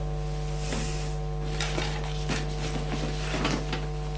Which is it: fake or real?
real